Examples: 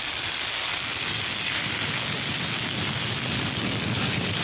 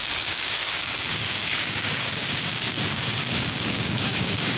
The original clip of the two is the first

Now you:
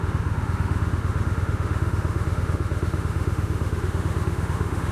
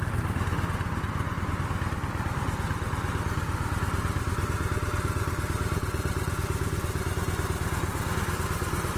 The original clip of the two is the second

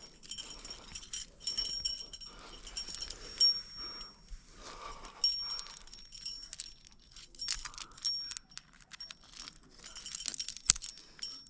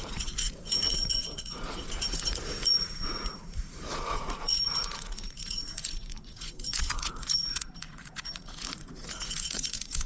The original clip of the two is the first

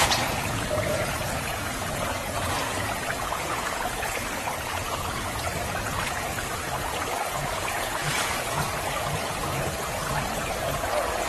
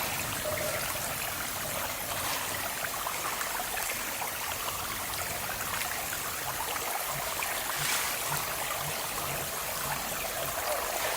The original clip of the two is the second